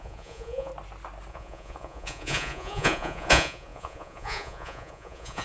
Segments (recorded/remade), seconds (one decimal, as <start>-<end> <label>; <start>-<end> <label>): 0.0-0.7 remade; 0.7-1.3 recorded; 1.3-5.4 remade